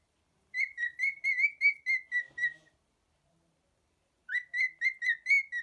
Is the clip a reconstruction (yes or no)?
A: no